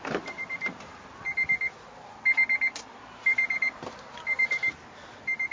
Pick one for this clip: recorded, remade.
recorded